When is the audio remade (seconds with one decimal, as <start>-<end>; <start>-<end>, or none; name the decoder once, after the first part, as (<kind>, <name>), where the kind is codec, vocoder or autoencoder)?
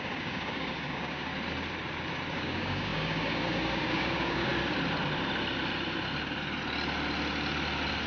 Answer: 0.0-1.3 (codec, DAC); 2.3-4.5